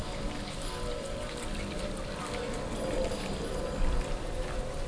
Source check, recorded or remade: recorded